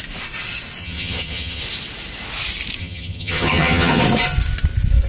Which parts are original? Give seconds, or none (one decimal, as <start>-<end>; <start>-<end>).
0.0-0.8; 1.6-2.8; 4.0-5.1